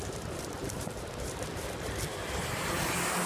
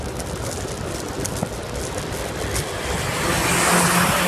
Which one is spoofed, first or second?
first